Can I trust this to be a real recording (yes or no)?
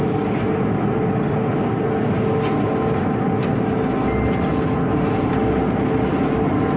yes